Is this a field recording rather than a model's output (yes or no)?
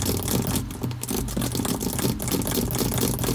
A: yes